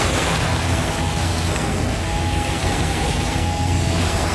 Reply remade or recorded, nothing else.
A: remade